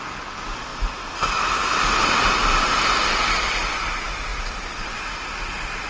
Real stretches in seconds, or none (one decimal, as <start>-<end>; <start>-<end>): 0.0-5.9